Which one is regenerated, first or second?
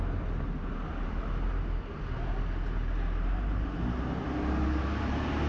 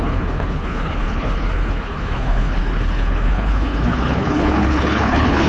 second